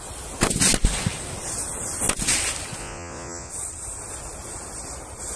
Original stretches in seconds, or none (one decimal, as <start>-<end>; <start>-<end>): 0.0-2.8; 3.5-5.4